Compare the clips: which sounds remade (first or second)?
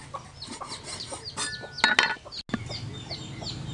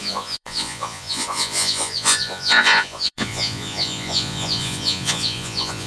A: second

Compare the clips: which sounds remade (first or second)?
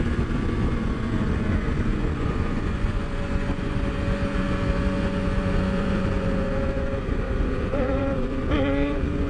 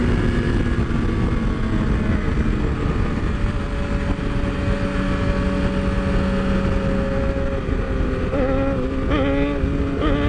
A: first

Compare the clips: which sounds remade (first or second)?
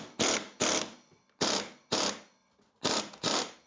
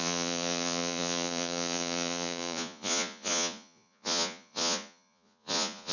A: second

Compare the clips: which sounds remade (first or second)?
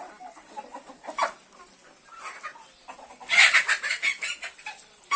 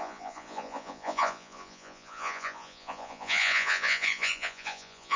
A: second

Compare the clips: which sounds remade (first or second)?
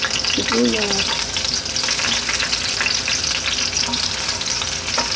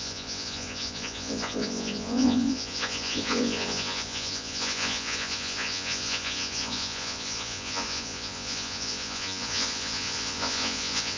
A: second